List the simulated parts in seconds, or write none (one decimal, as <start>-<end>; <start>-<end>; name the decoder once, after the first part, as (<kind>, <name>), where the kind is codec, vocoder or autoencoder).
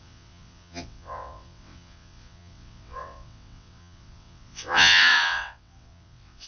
0.0-6.5 (vocoder, WaveNeXt)